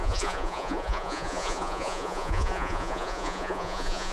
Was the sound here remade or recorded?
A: remade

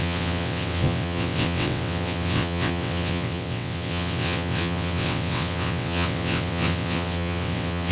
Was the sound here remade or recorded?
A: remade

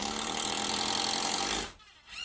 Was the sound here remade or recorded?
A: recorded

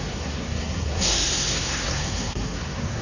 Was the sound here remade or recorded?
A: remade